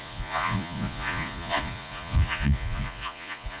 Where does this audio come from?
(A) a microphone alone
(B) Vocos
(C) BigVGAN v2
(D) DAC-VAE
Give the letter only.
B